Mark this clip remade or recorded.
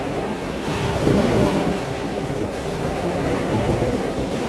remade